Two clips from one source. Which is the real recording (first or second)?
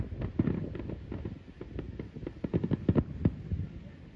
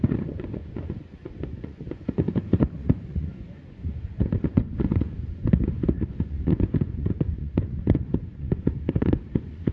first